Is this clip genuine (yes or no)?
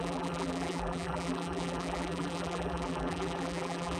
no